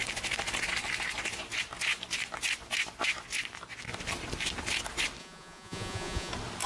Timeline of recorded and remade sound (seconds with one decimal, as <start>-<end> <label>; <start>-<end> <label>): 0.0-5.2 recorded; 5.2-6.3 remade; 6.3-6.7 recorded